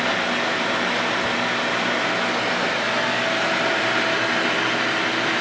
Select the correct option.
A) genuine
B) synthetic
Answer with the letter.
A